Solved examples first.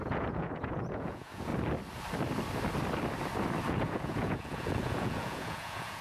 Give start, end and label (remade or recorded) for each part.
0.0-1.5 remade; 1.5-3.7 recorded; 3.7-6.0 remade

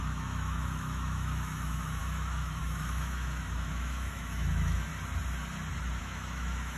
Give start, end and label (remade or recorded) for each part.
0.0-4.9 remade; 4.9-6.0 recorded; 6.0-6.8 remade